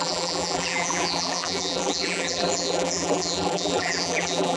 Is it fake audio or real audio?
fake